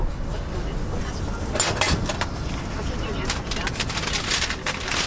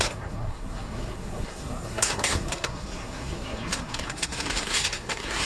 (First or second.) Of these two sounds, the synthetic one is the second